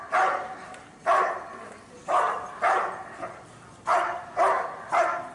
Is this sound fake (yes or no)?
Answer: no